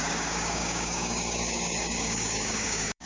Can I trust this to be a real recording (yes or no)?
no